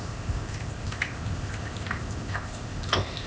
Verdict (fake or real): fake